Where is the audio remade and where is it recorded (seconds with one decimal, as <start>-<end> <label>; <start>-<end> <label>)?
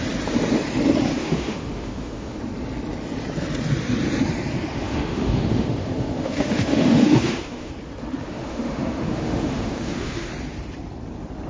0.0-1.1 recorded; 1.1-2.4 remade; 2.4-4.7 recorded; 4.7-7.7 remade; 7.7-8.2 recorded; 8.2-10.3 remade; 10.3-11.5 recorded